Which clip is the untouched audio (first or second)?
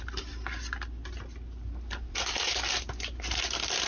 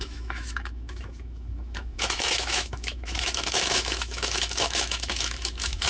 first